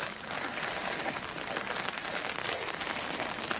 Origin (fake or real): real